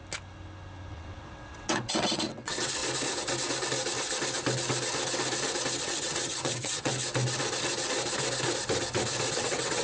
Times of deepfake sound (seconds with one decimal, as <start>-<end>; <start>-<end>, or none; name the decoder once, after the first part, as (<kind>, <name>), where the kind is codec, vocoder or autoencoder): 0.9-2.8 (vocoder, WaveNeXt); 5.8-6.9; 9.3-9.8